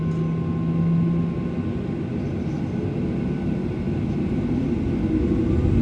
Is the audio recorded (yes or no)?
yes